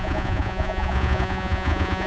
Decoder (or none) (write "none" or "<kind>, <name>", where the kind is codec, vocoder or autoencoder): vocoder, Vocos